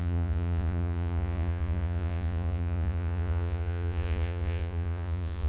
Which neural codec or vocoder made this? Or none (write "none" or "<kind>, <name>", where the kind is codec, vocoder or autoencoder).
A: vocoder, Vocos